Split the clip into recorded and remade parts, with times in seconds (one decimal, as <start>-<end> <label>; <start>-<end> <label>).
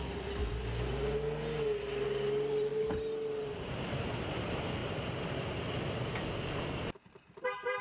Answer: 0.0-0.4 remade; 0.4-1.6 recorded; 1.6-4.8 remade; 4.8-7.0 recorded; 7.0-7.8 remade